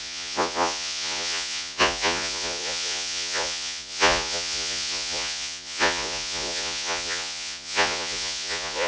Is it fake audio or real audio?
fake